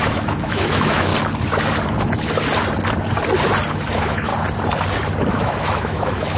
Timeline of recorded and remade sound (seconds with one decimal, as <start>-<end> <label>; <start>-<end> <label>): 0.0-1.1 remade; 1.1-3.7 recorded; 3.7-4.3 remade; 4.3-5.3 recorded; 5.3-6.4 remade